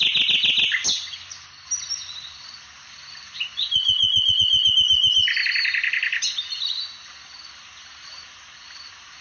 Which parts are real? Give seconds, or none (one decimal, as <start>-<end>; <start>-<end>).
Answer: 0.0-9.2